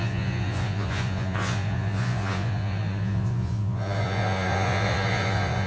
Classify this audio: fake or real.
fake